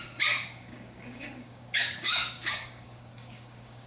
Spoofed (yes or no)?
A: yes